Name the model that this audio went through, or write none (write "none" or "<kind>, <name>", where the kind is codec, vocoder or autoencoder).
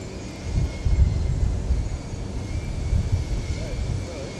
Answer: none